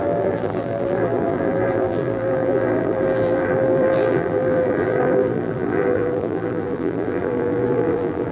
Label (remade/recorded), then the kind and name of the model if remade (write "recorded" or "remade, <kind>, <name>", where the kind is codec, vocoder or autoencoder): remade, vocoder, BigVGAN v2